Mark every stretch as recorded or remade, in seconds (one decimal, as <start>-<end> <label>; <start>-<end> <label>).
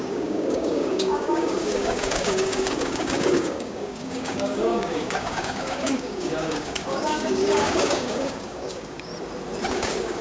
0.0-9.1 remade; 9.1-9.7 recorded; 9.7-10.2 remade